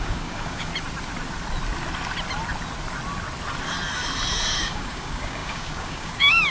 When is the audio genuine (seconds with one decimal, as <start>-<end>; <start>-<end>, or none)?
0.7-4.6